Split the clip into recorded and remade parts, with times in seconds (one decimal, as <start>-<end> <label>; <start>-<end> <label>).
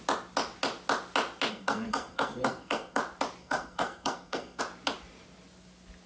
0.0-1.5 recorded; 1.5-3.0 remade; 3.0-3.4 recorded; 3.4-4.6 remade; 4.6-6.1 recorded